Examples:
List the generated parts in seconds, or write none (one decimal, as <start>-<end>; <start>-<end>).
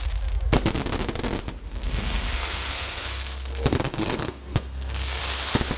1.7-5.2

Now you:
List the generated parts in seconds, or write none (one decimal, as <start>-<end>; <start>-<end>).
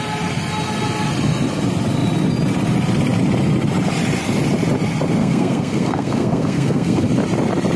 5.2-7.1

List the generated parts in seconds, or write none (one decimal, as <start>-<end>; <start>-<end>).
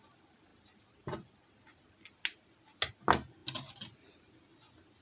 none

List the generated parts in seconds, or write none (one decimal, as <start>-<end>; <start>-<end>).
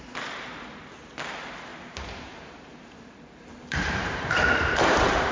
1.7-5.3